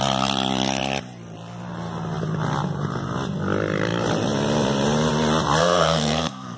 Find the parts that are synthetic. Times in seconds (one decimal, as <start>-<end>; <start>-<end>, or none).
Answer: 5.6-6.6